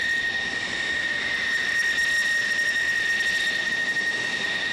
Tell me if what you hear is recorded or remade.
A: recorded